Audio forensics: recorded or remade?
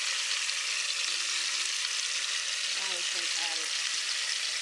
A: recorded